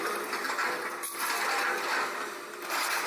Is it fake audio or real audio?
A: real